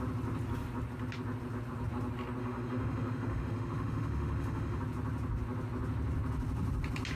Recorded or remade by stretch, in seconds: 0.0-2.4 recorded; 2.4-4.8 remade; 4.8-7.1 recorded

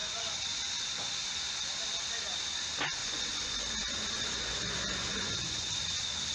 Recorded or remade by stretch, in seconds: 0.0-0.6 remade; 0.6-3.0 recorded; 3.0-5.8 remade; 5.8-6.3 recorded

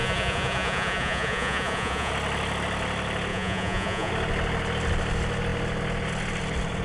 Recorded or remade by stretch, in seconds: 0.0-2.1 remade; 2.1-3.3 recorded; 3.3-4.1 remade; 4.1-6.8 recorded

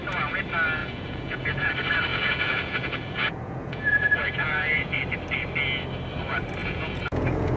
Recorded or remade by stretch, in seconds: 0.0-0.8 recorded; 0.8-1.7 remade; 1.7-2.1 recorded; 2.1-4.9 remade; 4.9-6.6 recorded; 6.6-7.6 remade

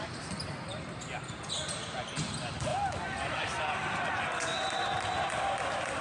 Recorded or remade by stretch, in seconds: 0.0-6.0 recorded